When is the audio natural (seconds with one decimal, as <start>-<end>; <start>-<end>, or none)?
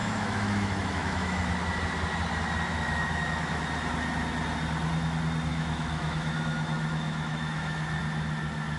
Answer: 1.5-2.7; 3.6-5.5; 8.0-8.8